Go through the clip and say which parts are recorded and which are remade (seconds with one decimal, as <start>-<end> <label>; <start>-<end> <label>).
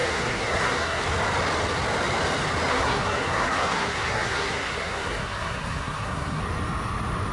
0.0-1.0 remade; 1.0-2.7 recorded; 2.7-6.4 remade; 6.4-7.3 recorded